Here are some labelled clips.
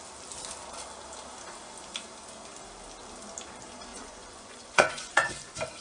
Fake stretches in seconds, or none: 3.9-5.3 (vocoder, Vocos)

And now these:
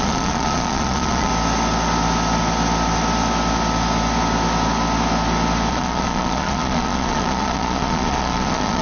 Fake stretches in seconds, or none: 0.0-1.3 (vocoder, Vocos); 5.7-8.8

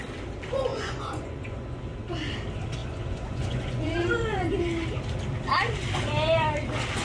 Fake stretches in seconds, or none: 0.7-1.8 (vocoder, Vocos); 2.8-4.5

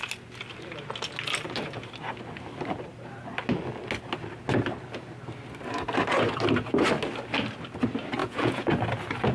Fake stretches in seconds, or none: 8.2-8.7 (vocoder, Vocos)

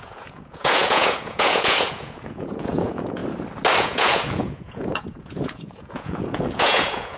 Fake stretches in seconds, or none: 0.0-3.2 (vocoder, Vocos); 3.8-7.2

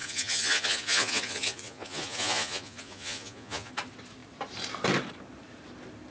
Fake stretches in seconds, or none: 0.0-3.7 (vocoder, Vocos)